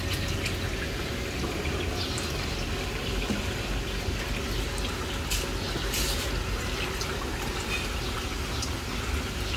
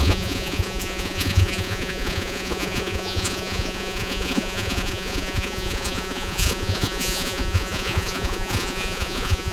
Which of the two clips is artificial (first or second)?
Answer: second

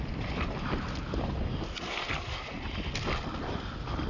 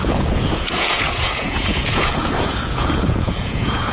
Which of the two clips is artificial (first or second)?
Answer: second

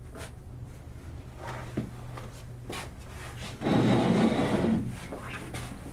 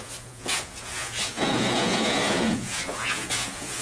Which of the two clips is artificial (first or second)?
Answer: second